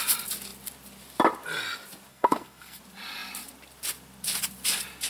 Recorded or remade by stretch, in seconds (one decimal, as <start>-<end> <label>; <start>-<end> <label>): 0.0-2.1 recorded; 2.1-2.8 remade; 2.8-5.1 recorded